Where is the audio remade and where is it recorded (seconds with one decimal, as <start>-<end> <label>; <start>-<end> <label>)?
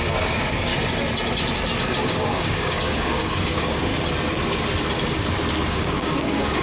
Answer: 0.0-0.7 remade; 0.7-1.8 recorded; 1.8-3.9 remade; 3.9-5.7 recorded; 5.7-6.6 remade